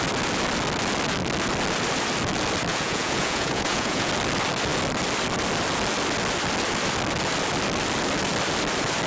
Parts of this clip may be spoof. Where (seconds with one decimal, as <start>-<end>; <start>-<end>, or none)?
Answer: 2.7-4.1